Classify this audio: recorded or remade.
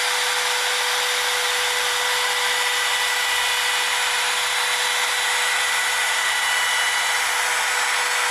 recorded